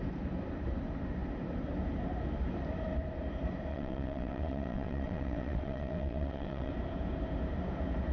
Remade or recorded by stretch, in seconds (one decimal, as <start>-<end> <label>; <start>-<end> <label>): 0.0-3.7 recorded; 3.7-6.7 remade; 6.7-8.1 recorded